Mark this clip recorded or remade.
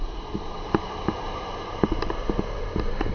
remade